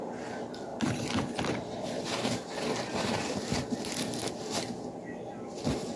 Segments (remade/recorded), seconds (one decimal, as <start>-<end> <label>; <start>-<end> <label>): 0.0-0.7 recorded; 0.7-4.3 remade; 4.3-6.0 recorded